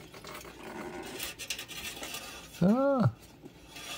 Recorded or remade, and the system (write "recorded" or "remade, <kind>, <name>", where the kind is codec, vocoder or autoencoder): recorded